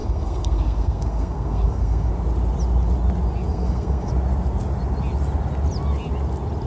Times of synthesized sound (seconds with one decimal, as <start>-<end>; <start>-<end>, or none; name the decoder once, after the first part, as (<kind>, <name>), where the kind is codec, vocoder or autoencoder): 0.0-2.1 (codec, SNAC); 3.5-4.1